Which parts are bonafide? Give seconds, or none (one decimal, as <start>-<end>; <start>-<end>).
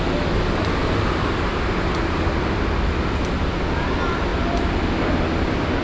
0.0-5.8